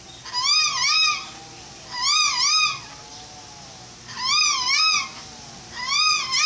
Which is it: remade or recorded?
recorded